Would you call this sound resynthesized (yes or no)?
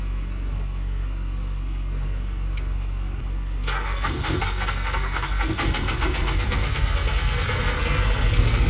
yes